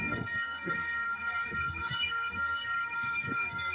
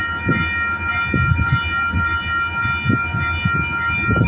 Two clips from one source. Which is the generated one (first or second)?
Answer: first